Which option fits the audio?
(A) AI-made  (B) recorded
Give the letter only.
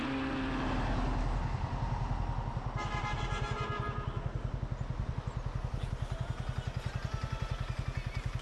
B